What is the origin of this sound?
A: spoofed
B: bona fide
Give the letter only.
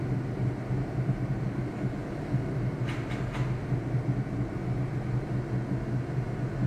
B